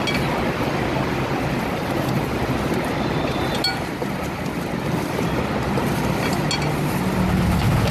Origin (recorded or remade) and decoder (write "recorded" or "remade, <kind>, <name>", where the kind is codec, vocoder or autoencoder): recorded